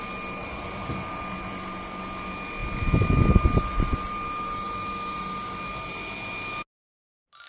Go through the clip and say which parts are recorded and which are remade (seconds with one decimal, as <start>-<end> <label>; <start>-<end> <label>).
0.0-0.4 recorded; 0.4-0.9 remade; 0.9-7.5 recorded